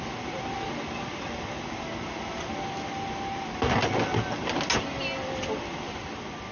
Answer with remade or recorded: recorded